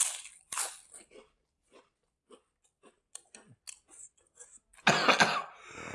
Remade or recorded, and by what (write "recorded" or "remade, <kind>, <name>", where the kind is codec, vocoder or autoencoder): recorded